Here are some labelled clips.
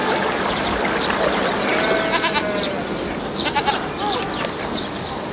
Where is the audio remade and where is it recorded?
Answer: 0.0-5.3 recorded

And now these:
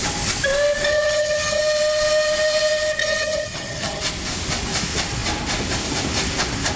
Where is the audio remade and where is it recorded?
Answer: 0.0-0.9 recorded; 0.9-1.6 remade; 1.6-3.0 recorded; 3.0-4.0 remade; 4.0-6.8 recorded